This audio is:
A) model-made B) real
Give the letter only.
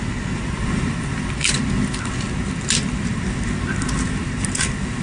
B